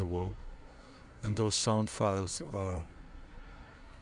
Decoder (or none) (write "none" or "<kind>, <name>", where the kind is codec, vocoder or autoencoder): codec, SNAC